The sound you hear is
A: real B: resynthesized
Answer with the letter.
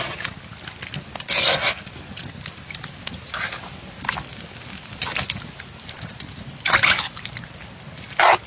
A